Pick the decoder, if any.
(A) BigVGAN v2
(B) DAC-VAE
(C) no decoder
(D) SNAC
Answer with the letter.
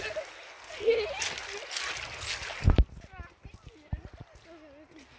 C